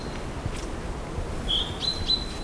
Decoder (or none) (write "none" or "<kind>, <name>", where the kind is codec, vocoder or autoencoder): none